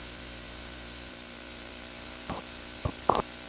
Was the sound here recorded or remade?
remade